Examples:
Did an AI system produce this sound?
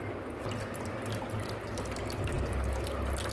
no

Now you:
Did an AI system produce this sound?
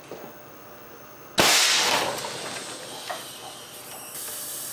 no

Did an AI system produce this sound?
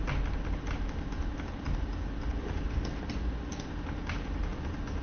no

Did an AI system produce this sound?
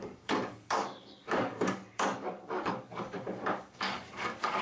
yes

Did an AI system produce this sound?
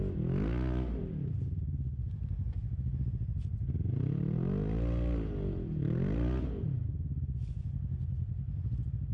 no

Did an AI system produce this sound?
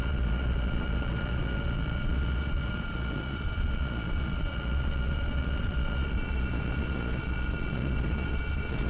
yes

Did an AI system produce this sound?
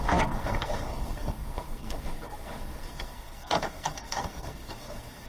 yes